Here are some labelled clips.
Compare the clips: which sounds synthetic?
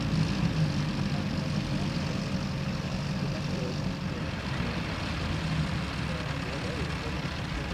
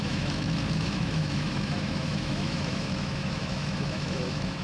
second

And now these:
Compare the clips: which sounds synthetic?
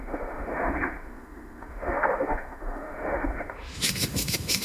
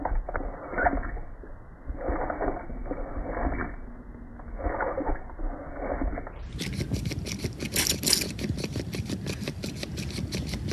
first